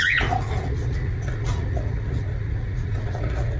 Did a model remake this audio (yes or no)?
yes